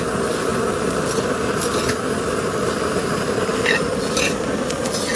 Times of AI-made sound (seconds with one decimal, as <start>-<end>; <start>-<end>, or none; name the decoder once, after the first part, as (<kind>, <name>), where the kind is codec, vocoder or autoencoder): none